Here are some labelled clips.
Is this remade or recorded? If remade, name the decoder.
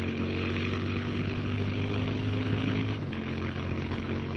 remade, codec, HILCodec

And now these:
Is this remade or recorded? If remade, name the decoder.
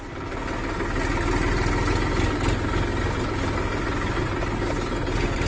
recorded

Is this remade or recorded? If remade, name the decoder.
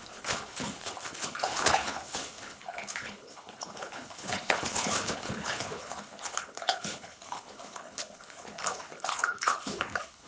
remade, codec, HILCodec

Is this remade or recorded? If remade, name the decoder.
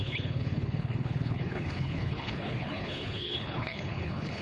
remade, codec, HILCodec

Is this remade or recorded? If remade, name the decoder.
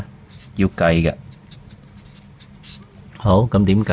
recorded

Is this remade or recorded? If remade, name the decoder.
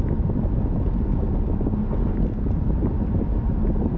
recorded